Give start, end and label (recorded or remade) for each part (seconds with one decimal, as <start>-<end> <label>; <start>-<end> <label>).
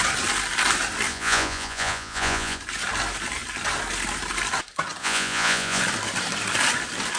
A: 0.0-1.1 recorded; 1.1-2.6 remade; 2.6-5.0 recorded; 5.0-5.8 remade; 5.8-7.2 recorded